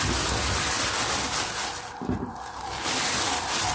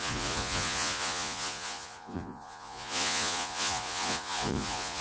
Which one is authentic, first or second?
first